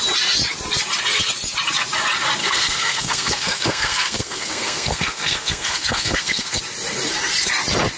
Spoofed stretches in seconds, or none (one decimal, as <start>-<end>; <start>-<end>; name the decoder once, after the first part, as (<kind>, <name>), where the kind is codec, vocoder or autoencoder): 2.4-6.6 (codec, SNAC)